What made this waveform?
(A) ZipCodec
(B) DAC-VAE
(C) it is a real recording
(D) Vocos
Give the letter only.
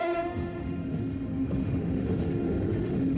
B